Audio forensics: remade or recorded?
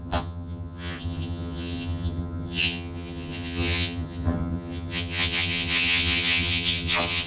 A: remade